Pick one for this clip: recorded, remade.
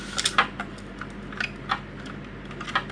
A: recorded